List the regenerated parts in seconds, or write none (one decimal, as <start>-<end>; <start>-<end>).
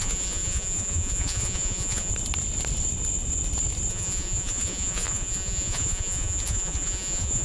0.0-2.1; 3.9-7.4